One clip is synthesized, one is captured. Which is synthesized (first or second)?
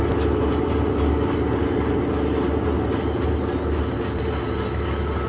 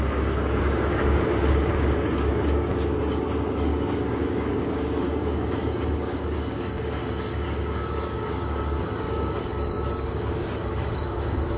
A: second